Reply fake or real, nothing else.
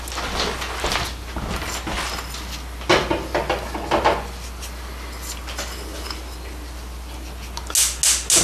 real